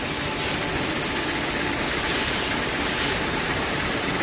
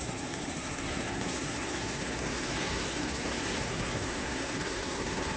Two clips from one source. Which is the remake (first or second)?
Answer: second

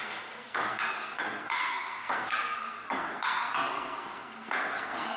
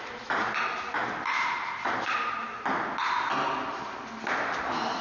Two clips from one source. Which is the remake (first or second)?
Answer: first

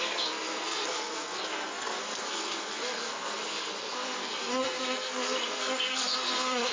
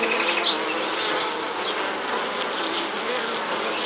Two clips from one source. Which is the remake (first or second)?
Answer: first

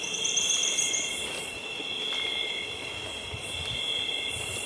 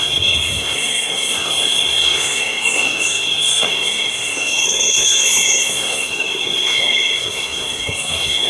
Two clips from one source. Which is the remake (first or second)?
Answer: second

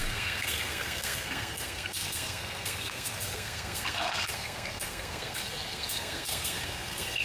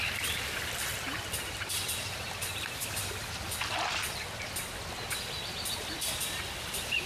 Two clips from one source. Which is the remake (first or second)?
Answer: first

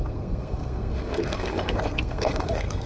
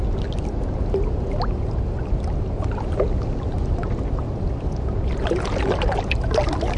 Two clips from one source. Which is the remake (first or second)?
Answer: first